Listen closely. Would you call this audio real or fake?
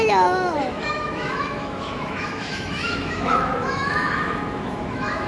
fake